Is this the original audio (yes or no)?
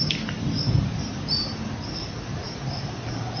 no